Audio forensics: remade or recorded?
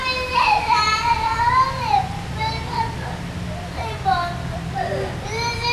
recorded